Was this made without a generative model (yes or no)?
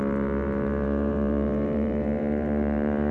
no